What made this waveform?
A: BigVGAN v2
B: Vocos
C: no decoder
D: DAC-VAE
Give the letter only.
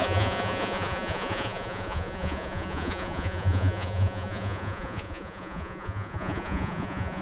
B